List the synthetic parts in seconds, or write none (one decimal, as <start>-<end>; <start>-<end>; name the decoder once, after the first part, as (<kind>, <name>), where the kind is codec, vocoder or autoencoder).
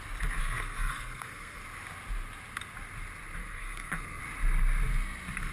0.4-1.6 (codec, SNAC); 3.4-4.2